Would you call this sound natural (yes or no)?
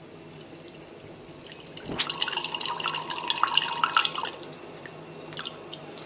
yes